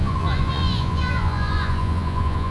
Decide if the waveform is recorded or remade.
remade